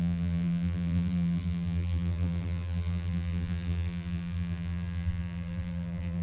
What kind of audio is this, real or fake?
fake